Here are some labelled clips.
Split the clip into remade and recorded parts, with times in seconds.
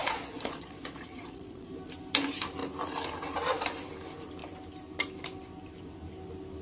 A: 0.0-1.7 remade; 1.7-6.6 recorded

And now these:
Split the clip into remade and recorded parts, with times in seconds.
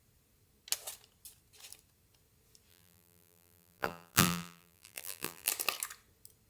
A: 0.0-2.7 recorded; 2.7-5.5 remade; 5.5-6.5 recorded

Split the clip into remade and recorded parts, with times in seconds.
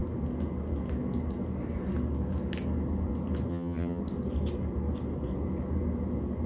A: 0.0-3.5 recorded; 3.5-4.0 remade; 4.0-6.5 recorded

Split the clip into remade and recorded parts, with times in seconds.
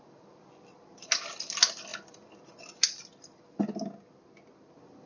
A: 0.0-5.1 recorded